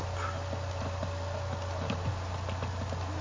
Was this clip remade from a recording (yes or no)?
no